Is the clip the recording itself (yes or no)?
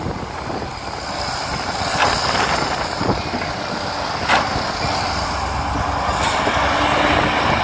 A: yes